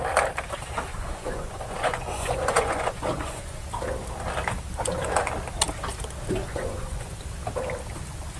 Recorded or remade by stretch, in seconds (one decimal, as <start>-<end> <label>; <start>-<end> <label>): 0.0-0.9 recorded; 0.9-3.6 remade; 3.6-6.4 recorded; 6.4-7.2 remade; 7.2-8.4 recorded